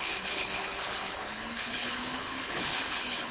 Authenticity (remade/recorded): remade